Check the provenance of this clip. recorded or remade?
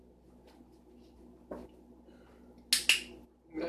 recorded